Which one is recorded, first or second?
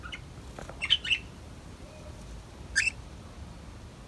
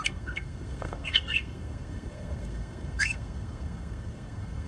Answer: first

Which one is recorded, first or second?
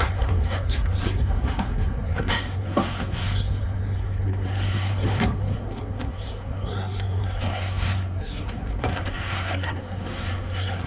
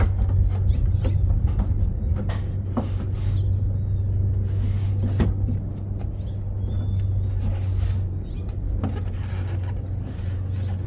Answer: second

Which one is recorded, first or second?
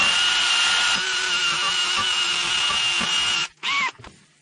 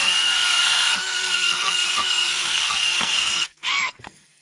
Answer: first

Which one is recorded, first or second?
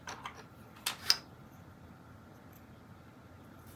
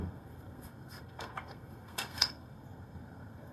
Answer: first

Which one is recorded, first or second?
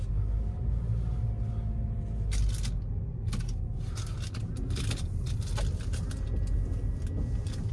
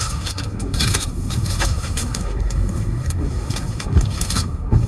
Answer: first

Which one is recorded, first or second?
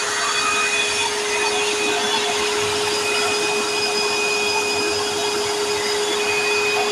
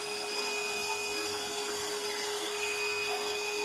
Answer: first